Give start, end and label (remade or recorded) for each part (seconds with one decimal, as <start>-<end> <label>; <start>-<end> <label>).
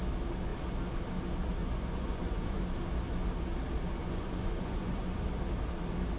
0.0-1.6 recorded; 1.6-2.6 remade; 2.6-4.0 recorded; 4.0-5.2 remade; 5.2-6.2 recorded